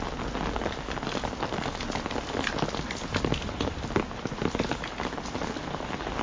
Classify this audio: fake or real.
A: real